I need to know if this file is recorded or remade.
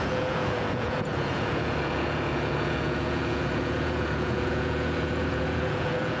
remade